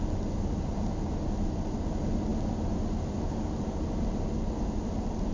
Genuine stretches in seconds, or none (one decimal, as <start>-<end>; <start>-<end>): 0.0-5.3